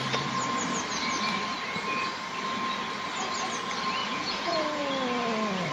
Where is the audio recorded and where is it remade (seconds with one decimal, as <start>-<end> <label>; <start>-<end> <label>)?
0.0-4.0 recorded; 4.0-4.8 remade; 4.8-5.7 recorded